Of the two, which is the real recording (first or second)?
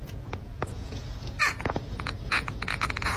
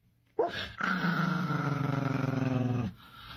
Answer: second